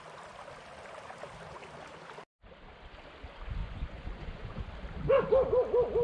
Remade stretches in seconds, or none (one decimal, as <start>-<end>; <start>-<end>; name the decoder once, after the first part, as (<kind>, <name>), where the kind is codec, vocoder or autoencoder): 3.6-4.7 (vocoder, Vocos)